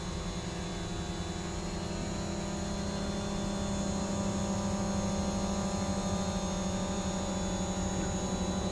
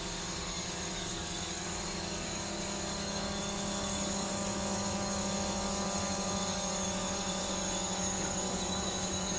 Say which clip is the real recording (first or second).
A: first